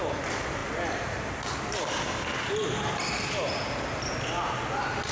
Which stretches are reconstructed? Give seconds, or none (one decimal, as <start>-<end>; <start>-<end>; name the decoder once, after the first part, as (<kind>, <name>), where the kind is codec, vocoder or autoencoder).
0.6-1.6 (vocoder, BigVGAN v2)